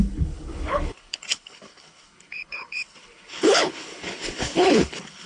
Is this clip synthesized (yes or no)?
yes